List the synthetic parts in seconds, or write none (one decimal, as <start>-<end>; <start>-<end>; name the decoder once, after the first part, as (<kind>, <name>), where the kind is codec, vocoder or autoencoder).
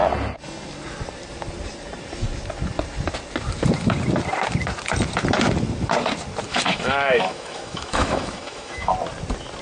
6.5-8.9 (autoencoder, DAC-VAE)